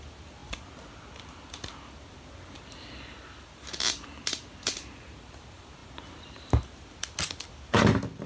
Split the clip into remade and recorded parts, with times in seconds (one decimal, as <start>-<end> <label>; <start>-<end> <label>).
0.0-8.3 recorded

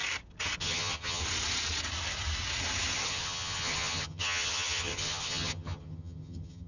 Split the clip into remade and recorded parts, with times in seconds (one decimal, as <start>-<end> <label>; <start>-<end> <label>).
0.0-0.6 recorded; 0.6-1.2 remade; 1.2-3.0 recorded; 3.0-6.7 remade